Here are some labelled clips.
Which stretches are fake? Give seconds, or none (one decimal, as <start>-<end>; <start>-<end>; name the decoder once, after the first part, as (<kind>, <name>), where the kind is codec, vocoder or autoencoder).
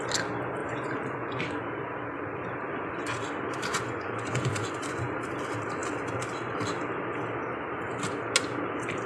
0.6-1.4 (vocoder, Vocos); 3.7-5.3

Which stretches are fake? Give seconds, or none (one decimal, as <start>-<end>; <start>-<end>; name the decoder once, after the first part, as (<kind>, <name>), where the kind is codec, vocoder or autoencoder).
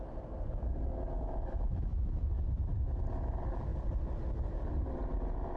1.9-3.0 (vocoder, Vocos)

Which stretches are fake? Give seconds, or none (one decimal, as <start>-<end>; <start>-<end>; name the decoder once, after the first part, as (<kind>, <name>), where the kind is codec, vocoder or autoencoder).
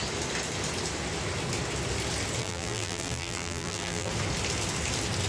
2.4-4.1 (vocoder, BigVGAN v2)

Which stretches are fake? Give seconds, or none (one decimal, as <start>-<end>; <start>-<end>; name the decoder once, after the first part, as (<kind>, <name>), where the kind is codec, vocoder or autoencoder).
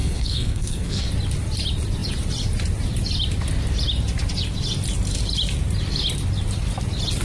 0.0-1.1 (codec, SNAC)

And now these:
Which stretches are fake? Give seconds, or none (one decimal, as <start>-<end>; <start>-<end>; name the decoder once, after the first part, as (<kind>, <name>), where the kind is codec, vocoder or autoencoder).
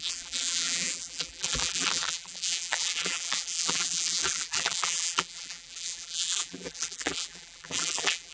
0.0-8.3 (vocoder, BigVGAN v2)